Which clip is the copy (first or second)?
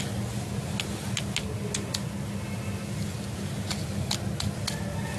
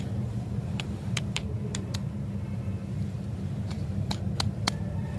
second